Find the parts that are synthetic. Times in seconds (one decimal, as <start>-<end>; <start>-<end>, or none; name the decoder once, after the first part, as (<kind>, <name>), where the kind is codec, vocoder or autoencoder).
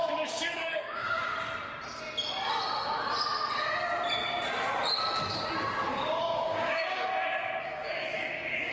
0.0-1.3 (codec, DAC); 5.9-7.1; 7.6-8.7